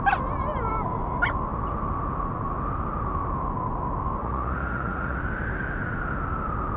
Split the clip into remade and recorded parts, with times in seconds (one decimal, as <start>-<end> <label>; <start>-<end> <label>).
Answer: 0.0-4.2 recorded; 4.2-5.2 remade; 5.2-6.8 recorded